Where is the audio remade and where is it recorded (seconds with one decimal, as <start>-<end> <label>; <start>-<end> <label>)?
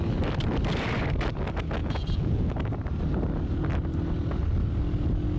0.0-1.8 recorded; 1.8-2.5 remade; 2.5-5.4 recorded